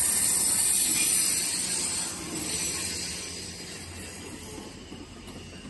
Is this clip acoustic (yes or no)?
yes